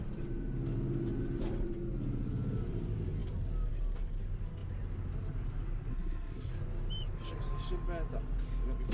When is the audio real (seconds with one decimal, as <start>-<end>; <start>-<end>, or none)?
0.0-5.9; 6.5-8.9